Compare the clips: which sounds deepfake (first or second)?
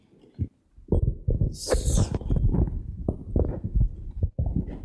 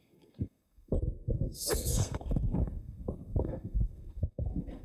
second